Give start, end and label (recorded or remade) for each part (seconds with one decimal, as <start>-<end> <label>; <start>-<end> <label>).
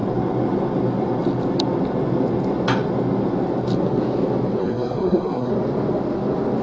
0.0-4.6 recorded; 4.6-5.5 remade; 5.5-6.6 recorded